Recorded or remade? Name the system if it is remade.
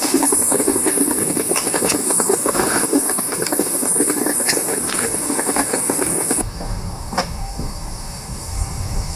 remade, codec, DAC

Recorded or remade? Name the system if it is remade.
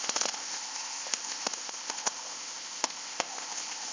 remade, codec, ZipCodec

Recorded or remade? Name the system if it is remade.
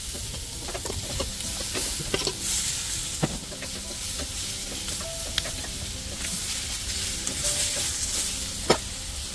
recorded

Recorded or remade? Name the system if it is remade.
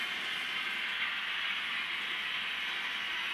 recorded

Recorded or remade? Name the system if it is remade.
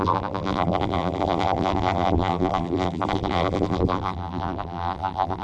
remade, vocoder, BigVGAN v2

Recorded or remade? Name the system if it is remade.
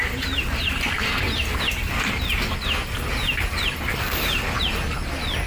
recorded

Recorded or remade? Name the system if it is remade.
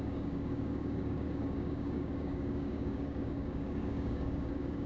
remade, codec, DAC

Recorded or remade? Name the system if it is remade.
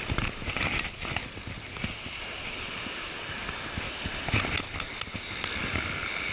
recorded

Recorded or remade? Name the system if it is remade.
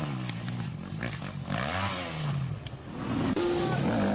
recorded